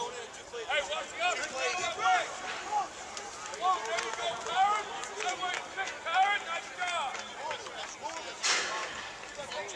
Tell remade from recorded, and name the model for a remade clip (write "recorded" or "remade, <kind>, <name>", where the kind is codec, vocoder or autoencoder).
recorded